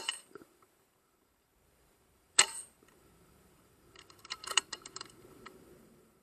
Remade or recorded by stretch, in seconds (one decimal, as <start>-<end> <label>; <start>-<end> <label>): 0.0-6.2 remade